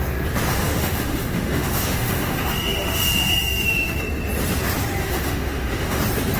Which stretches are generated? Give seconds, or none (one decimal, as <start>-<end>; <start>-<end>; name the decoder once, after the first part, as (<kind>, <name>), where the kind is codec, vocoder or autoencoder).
0.5-4.0 (autoencoder, DAC-VAE); 5.0-6.0